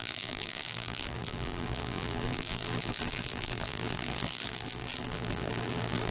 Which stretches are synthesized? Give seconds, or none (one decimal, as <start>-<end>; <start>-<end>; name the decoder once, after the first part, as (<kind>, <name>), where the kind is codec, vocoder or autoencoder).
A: 0.0-6.1 (vocoder, BigVGAN v2)